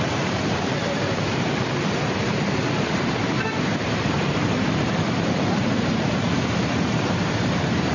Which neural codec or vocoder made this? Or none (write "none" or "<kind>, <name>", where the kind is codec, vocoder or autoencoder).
vocoder, BigVGAN v2